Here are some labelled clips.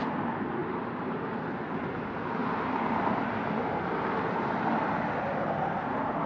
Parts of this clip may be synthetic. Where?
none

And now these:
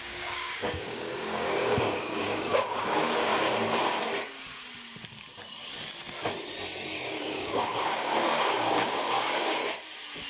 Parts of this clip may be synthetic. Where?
0.0-3.3 (codec, DAC); 7.0-9.6

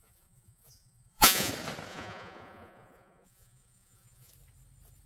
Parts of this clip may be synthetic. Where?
0.0-1.5 (vocoder, Vocos); 1.9-4.3